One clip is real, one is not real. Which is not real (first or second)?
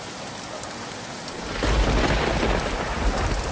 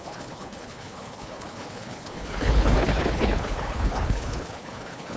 second